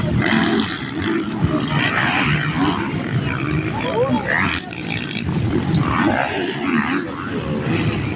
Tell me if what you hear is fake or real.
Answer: real